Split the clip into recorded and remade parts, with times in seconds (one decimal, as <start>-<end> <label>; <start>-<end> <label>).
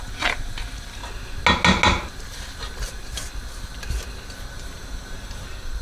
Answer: 0.0-1.0 remade; 1.0-4.5 recorded; 4.5-5.8 remade